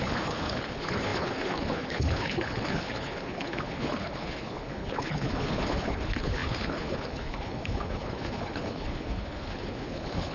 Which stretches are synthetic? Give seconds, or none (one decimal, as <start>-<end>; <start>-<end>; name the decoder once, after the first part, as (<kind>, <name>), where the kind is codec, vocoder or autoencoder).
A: 0.0-10.3 (codec, HILCodec)